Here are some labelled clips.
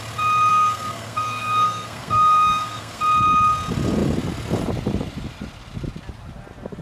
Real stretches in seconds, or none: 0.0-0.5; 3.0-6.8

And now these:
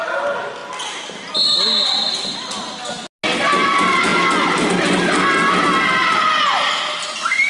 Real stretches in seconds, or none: 0.0-7.5